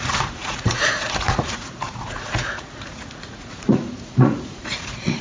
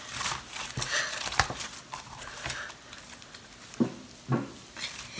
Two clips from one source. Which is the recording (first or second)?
second